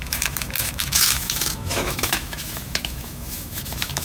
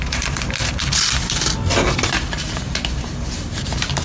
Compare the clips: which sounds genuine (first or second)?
second